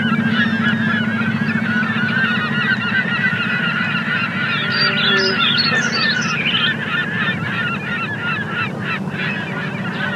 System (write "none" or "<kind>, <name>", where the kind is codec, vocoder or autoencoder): none